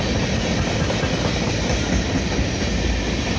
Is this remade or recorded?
recorded